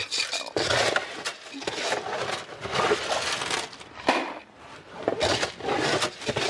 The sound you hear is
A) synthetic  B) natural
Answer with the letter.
B